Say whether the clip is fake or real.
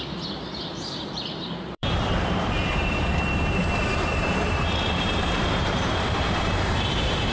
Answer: fake